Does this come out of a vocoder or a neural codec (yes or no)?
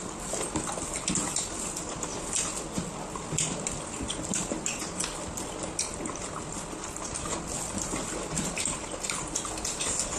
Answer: no